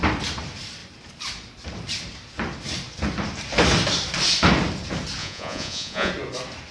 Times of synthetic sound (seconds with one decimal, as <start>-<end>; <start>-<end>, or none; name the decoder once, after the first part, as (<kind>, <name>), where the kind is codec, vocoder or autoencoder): 5.2-6.1 (vocoder, Vocos)